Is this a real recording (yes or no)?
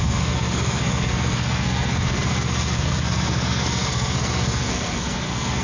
no